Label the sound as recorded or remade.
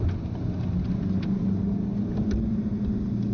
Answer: recorded